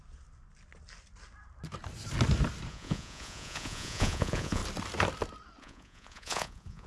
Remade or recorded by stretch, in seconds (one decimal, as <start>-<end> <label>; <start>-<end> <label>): 0.0-2.7 recorded; 2.7-4.6 remade; 4.6-5.6 recorded; 5.6-6.9 remade